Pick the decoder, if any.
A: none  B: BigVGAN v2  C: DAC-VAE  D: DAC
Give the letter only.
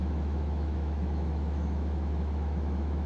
C